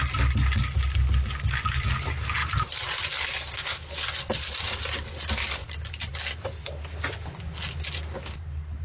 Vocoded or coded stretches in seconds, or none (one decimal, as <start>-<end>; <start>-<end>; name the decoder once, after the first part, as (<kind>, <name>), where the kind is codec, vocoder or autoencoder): none